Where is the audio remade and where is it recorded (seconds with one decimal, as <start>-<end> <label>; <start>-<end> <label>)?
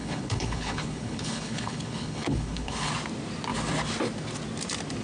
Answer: 0.0-2.9 remade; 2.9-5.0 recorded